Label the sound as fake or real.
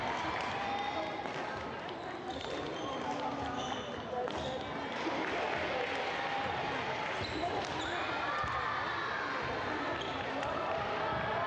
real